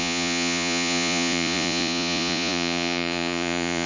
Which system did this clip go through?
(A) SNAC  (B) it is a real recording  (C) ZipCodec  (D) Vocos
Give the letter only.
D